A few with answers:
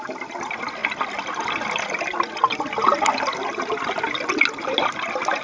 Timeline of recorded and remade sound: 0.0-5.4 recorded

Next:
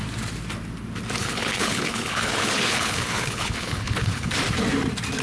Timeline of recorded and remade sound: 0.0-1.2 recorded; 1.2-4.3 remade; 4.3-5.2 recorded

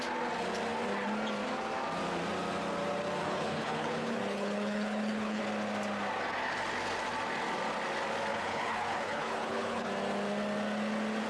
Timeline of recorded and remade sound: 0.0-3.2 recorded; 3.2-5.4 remade; 5.4-8.3 recorded; 8.3-9.9 remade; 9.9-11.3 recorded

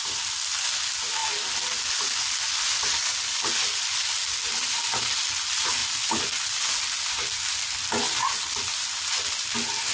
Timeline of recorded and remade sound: 0.0-9.9 recorded